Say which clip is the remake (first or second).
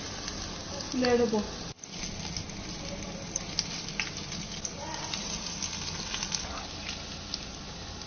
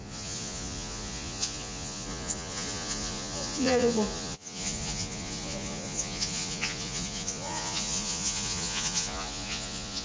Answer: second